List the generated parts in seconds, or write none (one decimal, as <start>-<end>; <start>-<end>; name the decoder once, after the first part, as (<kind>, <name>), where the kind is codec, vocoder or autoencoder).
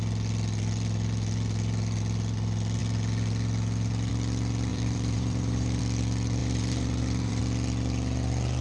4.7-5.8 (vocoder, BigVGAN v2); 6.4-7.4